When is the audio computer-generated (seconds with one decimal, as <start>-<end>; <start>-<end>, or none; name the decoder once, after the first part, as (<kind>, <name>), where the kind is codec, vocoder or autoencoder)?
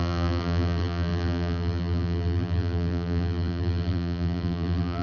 0.0-5.0 (vocoder, BigVGAN v2)